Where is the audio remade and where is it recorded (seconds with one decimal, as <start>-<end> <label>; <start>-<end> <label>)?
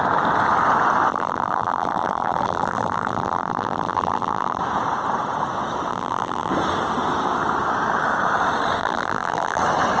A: 0.0-1.1 recorded; 1.1-4.6 remade; 4.6-5.9 recorded; 5.9-6.5 remade; 6.5-8.8 recorded; 8.8-9.6 remade; 9.6-10.0 recorded